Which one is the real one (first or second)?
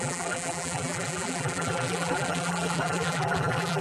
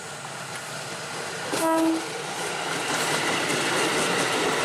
second